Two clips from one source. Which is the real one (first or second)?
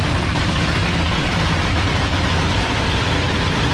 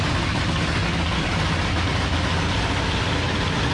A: second